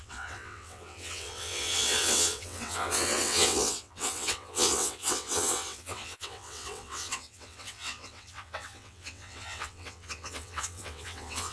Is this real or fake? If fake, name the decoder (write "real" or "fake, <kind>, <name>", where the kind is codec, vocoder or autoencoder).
fake, vocoder, WaveNeXt